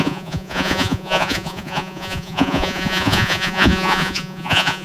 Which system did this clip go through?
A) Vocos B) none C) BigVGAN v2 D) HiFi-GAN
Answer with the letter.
A